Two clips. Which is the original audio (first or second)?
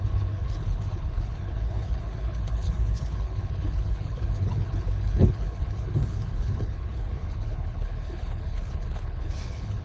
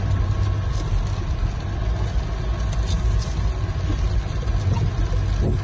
second